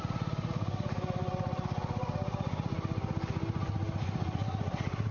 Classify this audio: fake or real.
real